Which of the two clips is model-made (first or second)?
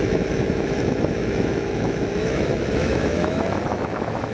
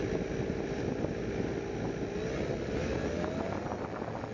first